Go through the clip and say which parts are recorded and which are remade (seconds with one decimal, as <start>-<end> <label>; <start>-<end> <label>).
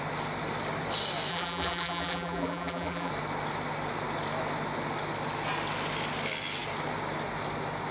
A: 0.0-1.3 recorded; 1.3-3.1 remade; 3.1-7.9 recorded